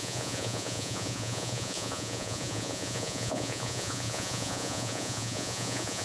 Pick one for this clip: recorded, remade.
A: remade